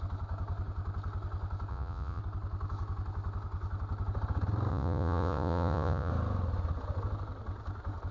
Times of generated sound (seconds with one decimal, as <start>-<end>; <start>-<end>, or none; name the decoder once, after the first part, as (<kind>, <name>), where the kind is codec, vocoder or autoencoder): 1.7-2.2 (vocoder, Vocos); 4.7-6.1